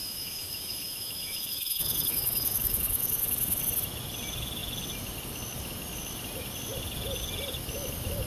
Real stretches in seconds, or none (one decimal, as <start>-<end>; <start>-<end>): 3.6-8.3

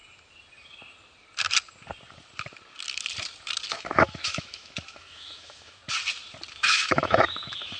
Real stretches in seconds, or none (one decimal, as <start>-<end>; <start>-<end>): 0.0-3.7; 5.8-6.5